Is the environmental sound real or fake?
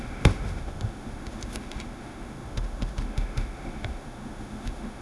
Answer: fake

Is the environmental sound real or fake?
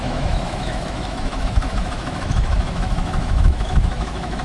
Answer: fake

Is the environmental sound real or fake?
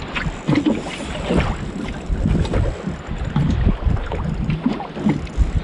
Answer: real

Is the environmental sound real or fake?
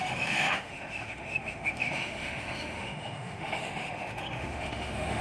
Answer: fake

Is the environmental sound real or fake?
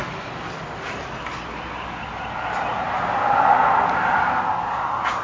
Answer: real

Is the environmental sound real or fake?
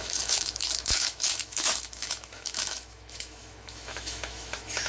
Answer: fake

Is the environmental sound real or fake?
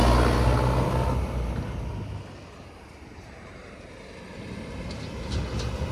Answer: real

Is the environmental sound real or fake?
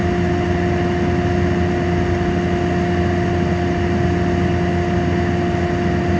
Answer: real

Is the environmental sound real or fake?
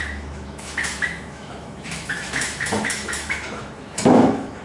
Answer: fake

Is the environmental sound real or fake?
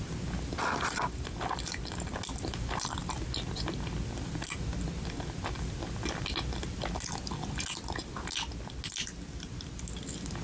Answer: real